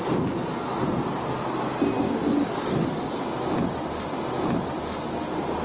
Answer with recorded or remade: recorded